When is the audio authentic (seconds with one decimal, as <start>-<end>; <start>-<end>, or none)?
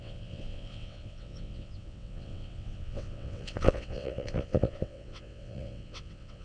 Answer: none